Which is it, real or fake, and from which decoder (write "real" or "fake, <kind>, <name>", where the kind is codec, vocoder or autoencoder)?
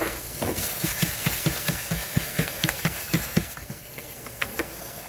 fake, codec, SNAC